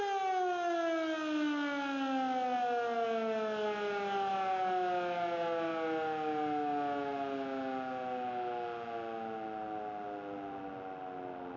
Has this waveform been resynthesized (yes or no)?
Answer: no